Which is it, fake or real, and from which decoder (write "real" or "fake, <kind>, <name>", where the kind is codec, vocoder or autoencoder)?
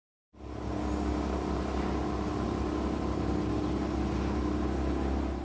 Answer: real